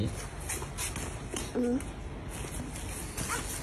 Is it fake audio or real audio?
real